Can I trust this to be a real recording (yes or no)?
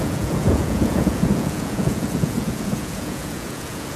no